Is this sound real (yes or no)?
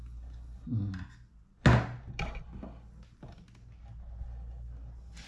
yes